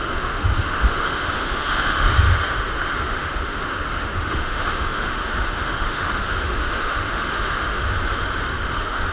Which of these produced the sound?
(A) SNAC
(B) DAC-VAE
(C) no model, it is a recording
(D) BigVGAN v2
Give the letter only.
B